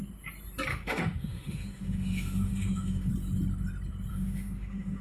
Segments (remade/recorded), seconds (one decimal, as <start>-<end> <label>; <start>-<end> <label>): 0.0-0.7 recorded; 0.7-3.1 remade; 3.1-4.1 recorded; 4.1-5.0 remade